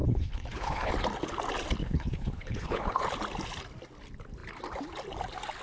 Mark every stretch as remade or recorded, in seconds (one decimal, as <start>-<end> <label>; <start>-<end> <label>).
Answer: 0.0-0.9 remade; 0.9-1.8 recorded; 1.8-3.0 remade; 3.0-5.6 recorded